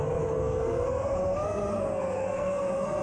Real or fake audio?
fake